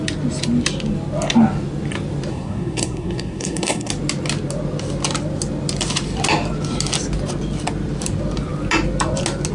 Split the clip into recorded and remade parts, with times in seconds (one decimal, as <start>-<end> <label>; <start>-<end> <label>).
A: 0.0-2.3 recorded; 2.3-3.9 remade; 3.9-9.5 recorded